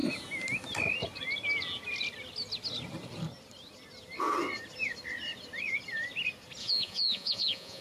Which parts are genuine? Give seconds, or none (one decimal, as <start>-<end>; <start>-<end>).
0.0-6.6